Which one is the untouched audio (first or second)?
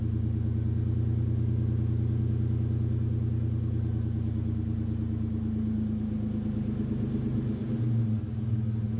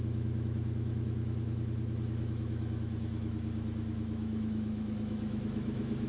first